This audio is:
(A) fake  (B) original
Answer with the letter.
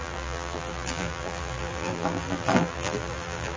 A